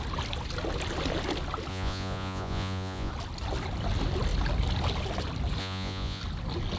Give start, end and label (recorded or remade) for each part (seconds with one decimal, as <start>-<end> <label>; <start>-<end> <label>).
0.0-1.7 recorded; 1.7-3.1 remade; 3.1-5.6 recorded; 5.6-6.2 remade; 6.2-6.8 recorded